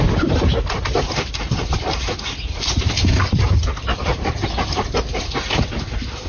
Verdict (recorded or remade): recorded